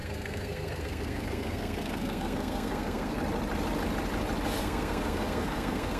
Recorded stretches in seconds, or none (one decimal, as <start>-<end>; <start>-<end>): 3.2-4.6